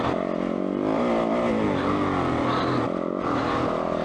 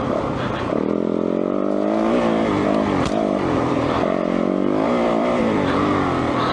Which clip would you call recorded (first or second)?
first